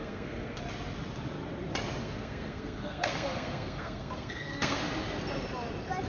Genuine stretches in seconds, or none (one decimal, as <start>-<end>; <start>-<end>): 0.6-2.0; 4.8-6.1